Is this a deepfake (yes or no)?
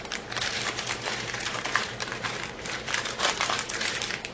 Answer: yes